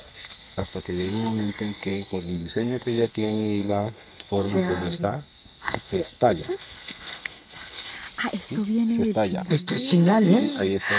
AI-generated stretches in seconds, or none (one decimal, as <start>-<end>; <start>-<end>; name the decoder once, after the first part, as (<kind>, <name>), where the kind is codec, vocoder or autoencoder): 0.0-7.9 (codec, SNAC); 9.5-11.0